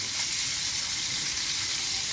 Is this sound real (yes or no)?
yes